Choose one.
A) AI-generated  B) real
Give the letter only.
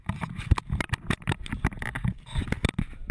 B